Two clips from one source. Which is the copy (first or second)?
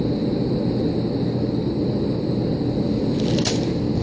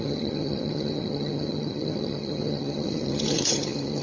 second